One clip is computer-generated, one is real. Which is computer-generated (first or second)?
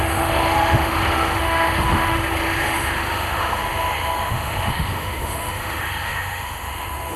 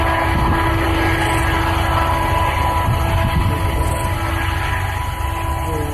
first